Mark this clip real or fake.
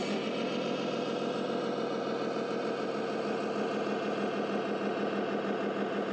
real